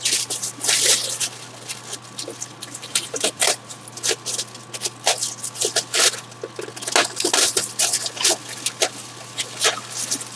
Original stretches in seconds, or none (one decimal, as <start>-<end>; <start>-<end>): 0.0-2.5; 3.9-10.4